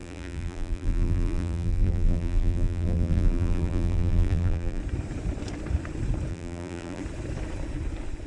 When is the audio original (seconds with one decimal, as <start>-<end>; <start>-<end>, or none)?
4.8-6.3; 7.0-8.3

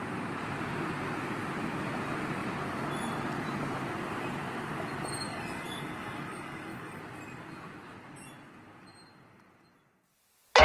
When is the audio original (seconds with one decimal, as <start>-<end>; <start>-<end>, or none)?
0.0-5.3; 7.0-10.6

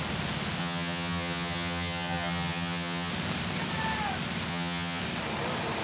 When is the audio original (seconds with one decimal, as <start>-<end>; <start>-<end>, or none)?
0.0-0.6; 3.1-4.5; 5.0-5.8

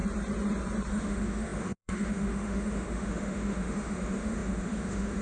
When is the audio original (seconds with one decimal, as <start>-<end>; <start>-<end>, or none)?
0.0-0.9

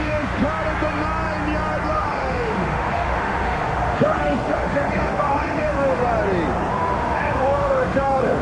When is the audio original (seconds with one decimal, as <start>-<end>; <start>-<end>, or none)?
0.4-1.9; 6.0-6.7